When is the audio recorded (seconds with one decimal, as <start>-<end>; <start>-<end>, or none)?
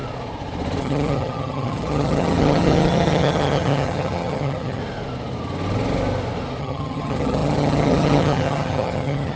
0.0-0.8; 4.8-6.6